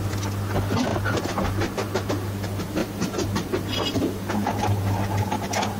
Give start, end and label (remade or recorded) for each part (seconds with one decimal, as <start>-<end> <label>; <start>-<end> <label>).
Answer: 0.0-0.9 recorded; 0.9-2.1 remade; 2.1-2.8 recorded; 2.8-4.8 remade; 4.8-5.8 recorded